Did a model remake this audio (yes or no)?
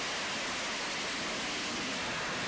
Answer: no